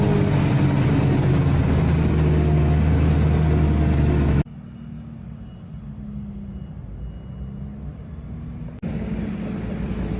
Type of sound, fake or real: real